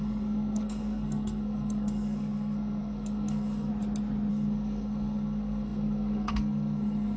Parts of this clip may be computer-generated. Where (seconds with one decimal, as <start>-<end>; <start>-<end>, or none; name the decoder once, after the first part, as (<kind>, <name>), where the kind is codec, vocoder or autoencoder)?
0.0-3.7 (codec, SNAC); 4.3-7.2